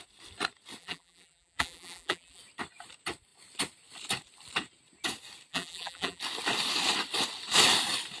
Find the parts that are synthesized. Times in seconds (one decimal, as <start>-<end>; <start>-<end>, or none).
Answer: 0.8-2.4; 5.5-6.2